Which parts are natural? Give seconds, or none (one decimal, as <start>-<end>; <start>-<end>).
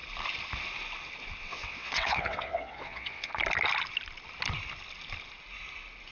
0.0-1.4; 3.3-6.1